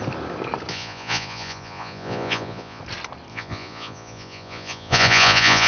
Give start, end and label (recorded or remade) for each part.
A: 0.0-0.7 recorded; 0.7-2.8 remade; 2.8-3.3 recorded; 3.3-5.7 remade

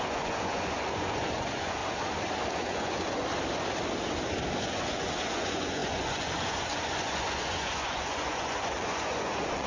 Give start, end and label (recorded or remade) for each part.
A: 0.0-1.8 remade; 1.8-2.5 recorded; 2.5-3.3 remade; 3.3-4.5 recorded; 4.5-9.7 remade

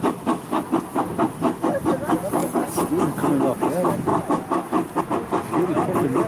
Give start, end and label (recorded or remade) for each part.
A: 0.0-4.1 recorded; 4.1-5.0 remade; 5.0-6.3 recorded

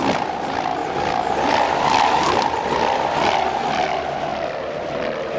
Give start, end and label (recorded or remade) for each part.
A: 0.0-0.8 recorded; 0.8-3.3 remade; 3.3-4.3 recorded; 4.3-5.4 remade

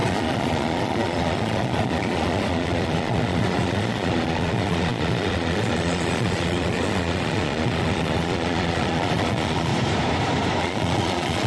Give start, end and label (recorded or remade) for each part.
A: 0.0-9.7 remade; 9.7-10.6 recorded; 10.6-11.5 remade

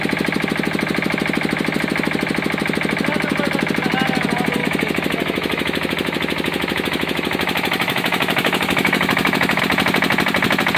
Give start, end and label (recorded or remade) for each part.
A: 0.0-4.6 recorded; 4.6-9.6 remade; 9.6-10.8 recorded